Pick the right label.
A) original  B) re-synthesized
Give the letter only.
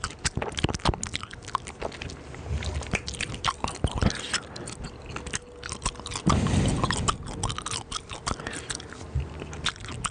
A